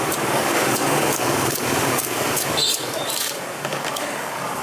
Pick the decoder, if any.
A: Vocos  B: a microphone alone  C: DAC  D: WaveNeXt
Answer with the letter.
C